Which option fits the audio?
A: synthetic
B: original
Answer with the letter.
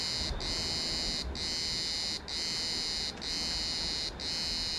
B